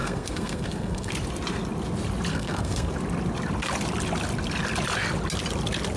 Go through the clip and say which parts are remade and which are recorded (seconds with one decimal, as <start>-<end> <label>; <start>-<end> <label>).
0.0-1.1 remade; 1.1-2.3 recorded; 2.3-2.9 remade; 2.9-6.0 recorded

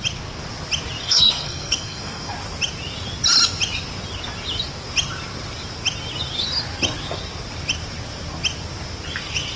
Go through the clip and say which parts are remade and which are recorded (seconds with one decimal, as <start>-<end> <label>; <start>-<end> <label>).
0.0-1.0 recorded; 1.0-2.3 remade; 2.3-9.6 recorded